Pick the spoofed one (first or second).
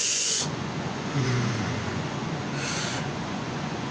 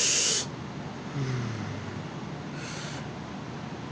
first